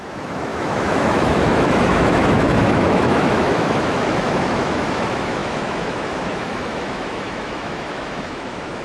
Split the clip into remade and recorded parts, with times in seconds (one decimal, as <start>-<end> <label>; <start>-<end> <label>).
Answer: 0.0-8.8 remade